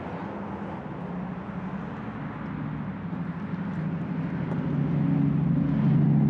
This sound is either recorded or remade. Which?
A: recorded